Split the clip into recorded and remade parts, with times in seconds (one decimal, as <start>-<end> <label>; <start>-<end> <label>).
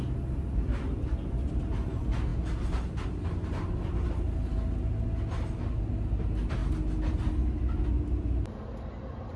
0.0-9.4 recorded